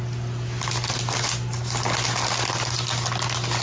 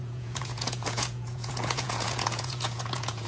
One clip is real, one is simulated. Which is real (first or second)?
first